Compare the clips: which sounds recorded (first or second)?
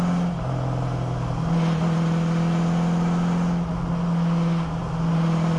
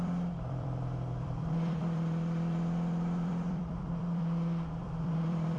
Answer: first